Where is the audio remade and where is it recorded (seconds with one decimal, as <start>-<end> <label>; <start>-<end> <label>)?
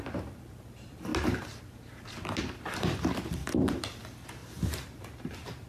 0.0-5.7 remade